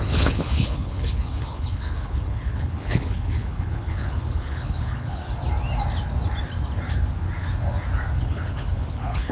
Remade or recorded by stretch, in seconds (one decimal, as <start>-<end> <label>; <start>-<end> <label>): 0.0-5.2 remade; 5.2-8.2 recorded; 8.2-9.3 remade